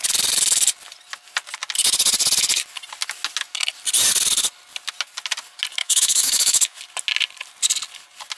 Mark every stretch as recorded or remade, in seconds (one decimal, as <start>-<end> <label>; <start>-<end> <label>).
0.0-5.8 recorded; 5.8-6.8 remade; 6.8-8.4 recorded